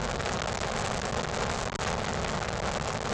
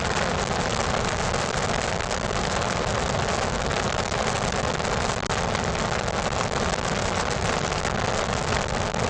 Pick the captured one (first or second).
first